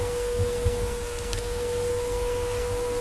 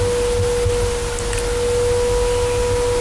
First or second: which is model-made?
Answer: first